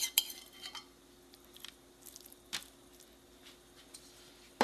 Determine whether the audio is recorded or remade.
recorded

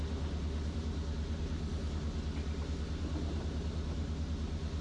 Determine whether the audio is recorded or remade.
recorded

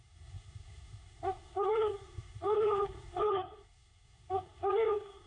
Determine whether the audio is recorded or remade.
remade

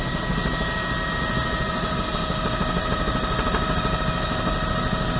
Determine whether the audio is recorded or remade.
recorded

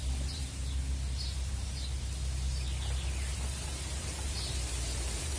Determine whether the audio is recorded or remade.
recorded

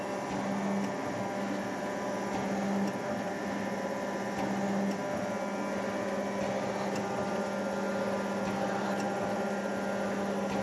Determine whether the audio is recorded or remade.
recorded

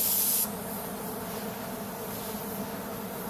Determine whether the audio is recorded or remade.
recorded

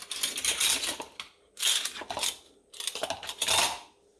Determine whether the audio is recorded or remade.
recorded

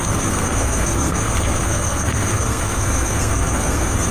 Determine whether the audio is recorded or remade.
remade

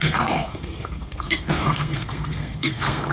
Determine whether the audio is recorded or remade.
remade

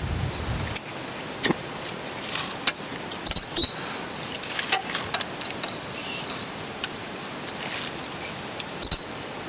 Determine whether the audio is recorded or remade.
recorded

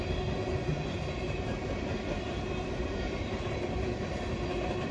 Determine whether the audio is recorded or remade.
recorded